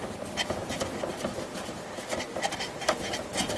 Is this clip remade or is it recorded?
recorded